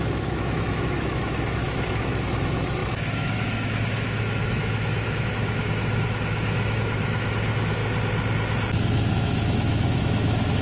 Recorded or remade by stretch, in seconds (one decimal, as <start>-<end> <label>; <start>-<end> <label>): 0.0-7.8 remade; 7.8-9.1 recorded; 9.1-10.6 remade